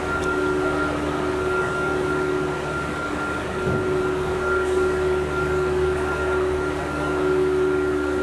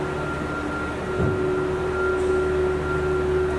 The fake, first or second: first